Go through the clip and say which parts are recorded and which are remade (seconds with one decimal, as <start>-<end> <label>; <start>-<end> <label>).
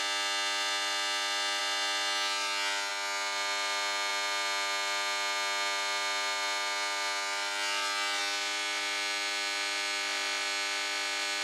0.0-11.4 recorded